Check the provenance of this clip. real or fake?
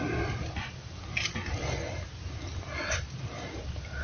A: real